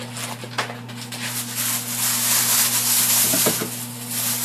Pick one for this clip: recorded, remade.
recorded